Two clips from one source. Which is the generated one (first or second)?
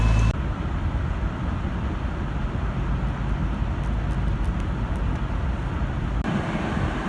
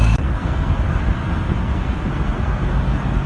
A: second